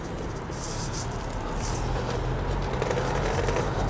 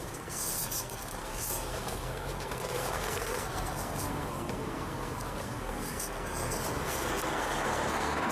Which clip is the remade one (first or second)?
second